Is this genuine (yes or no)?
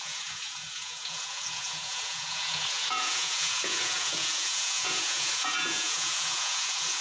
no